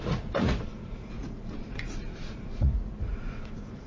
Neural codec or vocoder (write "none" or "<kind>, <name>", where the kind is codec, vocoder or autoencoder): vocoder, Vocos